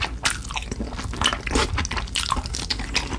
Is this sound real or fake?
real